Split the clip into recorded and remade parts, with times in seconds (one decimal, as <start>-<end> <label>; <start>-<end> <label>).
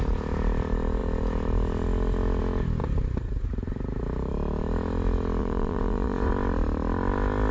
0.0-5.4 recorded; 5.4-6.3 remade; 6.3-7.5 recorded